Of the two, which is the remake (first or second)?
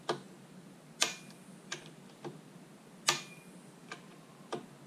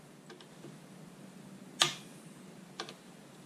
second